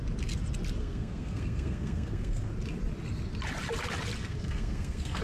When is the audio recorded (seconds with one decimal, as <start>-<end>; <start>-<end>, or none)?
0.0-0.8; 2.5-4.2